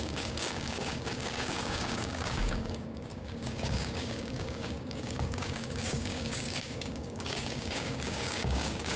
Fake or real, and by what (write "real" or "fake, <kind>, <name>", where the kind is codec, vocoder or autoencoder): fake, codec, DAC